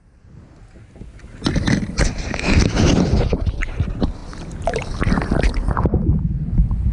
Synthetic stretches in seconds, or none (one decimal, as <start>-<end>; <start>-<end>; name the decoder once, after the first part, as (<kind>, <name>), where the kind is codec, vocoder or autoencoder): 4.2-6.9 (vocoder, BigVGAN v2)